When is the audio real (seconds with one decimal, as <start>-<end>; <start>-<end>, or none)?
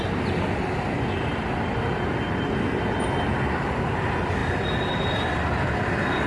0.0-6.3